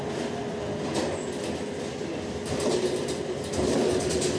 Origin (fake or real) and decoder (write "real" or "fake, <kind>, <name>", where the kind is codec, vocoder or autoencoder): real